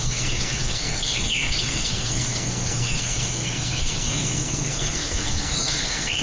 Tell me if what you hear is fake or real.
fake